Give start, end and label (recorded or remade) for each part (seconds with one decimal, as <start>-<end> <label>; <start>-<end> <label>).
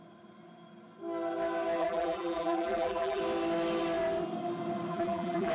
0.0-1.8 recorded; 1.8-3.2 remade; 3.2-4.9 recorded; 4.9-5.5 remade